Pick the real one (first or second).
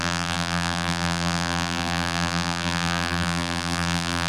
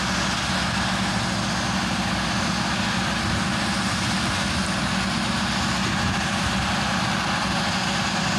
second